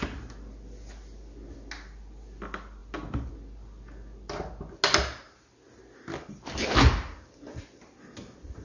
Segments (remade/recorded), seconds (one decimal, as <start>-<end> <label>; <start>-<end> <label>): 0.0-8.6 recorded